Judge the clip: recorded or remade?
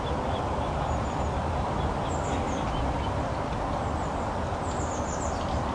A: recorded